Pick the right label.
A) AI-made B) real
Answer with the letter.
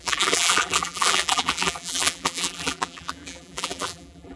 A